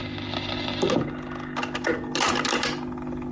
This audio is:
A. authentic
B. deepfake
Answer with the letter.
A